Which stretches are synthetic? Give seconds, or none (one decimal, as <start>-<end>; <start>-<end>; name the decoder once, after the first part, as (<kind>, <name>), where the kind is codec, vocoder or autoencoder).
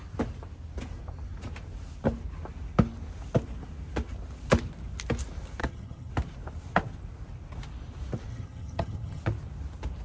5.6-6.1 (vocoder, HiFi-GAN); 8.3-9.2